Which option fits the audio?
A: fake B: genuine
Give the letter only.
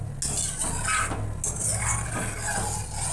B